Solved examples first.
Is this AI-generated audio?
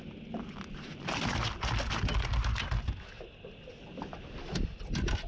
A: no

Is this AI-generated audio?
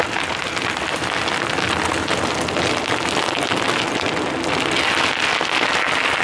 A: no